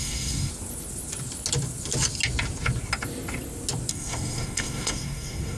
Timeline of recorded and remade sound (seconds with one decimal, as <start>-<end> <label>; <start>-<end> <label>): 0.0-0.5 remade; 0.5-3.9 recorded; 3.9-5.6 remade